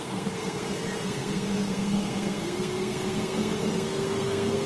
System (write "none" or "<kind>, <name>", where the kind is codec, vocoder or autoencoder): codec, SNAC